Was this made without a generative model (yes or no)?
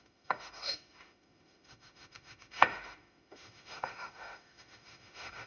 no